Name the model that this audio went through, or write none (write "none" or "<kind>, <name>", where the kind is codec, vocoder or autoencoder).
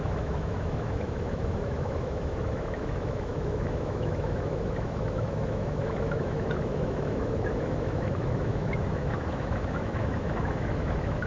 autoencoder, DAC-VAE